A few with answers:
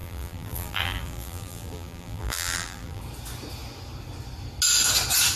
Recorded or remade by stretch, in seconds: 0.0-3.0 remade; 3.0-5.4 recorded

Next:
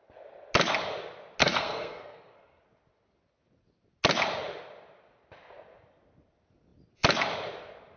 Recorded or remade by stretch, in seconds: 0.0-1.4 recorded; 1.4-2.6 remade; 2.6-8.0 recorded

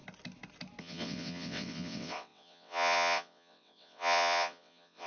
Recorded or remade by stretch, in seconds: 0.0-0.8 recorded; 0.8-5.1 remade